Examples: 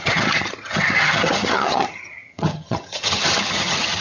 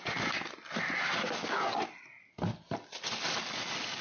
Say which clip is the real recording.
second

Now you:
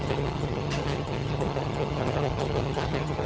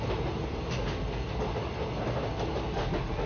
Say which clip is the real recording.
second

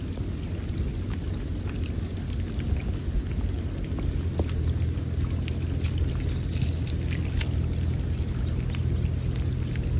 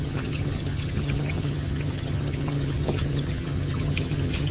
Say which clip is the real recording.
first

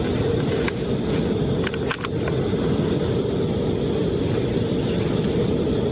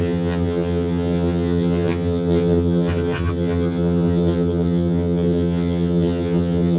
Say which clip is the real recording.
first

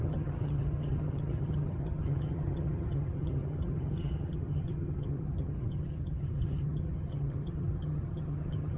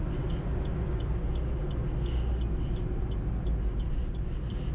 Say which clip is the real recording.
second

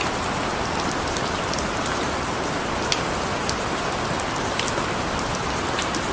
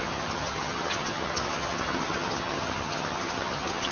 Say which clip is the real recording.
first